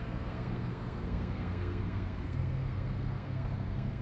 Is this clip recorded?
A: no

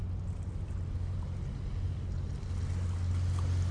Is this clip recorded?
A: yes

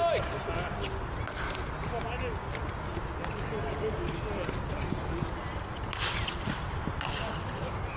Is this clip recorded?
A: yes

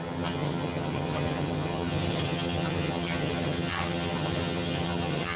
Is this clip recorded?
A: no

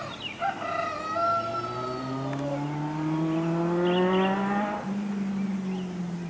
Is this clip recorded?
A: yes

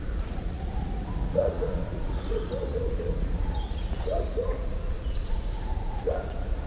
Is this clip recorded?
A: no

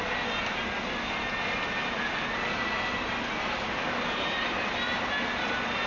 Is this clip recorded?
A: yes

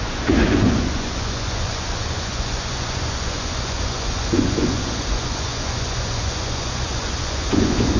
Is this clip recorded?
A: no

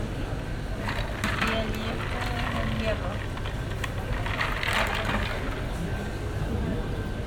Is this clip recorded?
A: yes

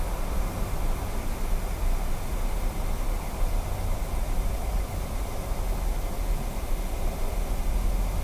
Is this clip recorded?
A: yes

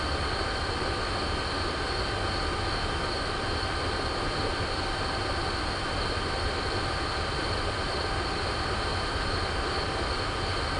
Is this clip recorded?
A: yes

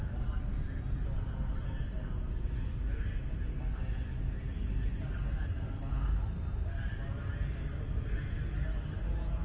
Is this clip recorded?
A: yes